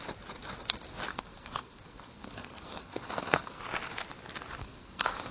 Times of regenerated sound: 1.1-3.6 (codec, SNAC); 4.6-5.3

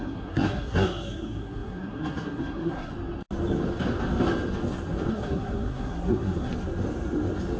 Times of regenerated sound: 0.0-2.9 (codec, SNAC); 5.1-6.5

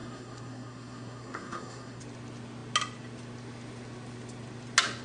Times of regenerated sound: 0.0-2.0 (codec, SNAC)